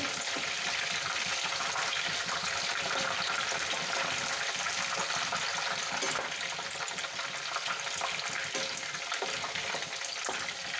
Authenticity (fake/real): real